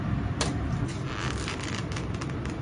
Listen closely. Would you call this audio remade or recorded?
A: recorded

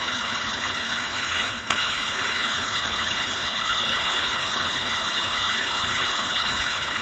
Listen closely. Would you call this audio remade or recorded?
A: remade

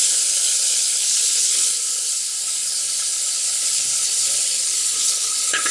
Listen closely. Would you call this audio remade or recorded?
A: remade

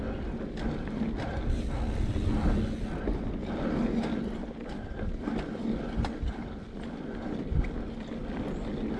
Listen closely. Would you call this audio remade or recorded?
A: recorded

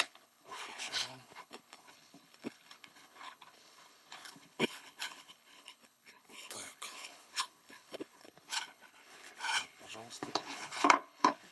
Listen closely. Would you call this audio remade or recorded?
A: remade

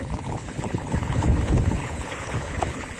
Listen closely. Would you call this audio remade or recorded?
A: remade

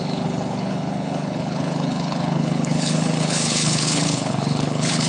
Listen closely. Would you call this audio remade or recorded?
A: remade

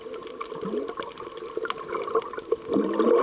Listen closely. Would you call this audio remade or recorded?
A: recorded